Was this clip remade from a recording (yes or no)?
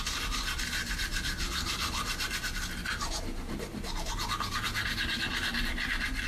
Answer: no